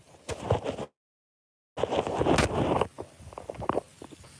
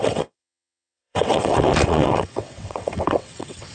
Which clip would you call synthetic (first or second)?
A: second